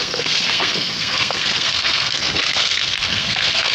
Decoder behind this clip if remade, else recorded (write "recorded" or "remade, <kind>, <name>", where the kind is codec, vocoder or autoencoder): remade, codec, SNAC